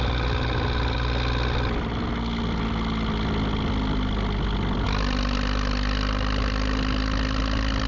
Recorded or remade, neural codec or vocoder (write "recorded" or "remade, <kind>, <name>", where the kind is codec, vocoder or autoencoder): recorded